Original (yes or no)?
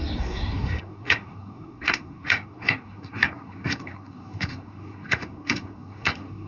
no